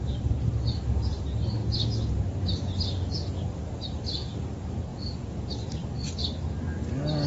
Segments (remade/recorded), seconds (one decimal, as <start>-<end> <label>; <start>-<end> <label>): 0.0-7.3 recorded